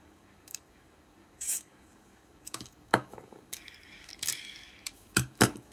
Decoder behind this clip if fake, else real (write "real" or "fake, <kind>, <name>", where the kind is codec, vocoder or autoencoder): fake, codec, DAC